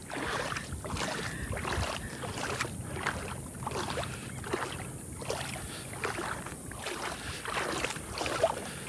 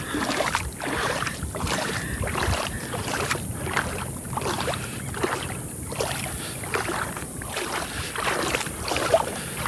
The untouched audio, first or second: first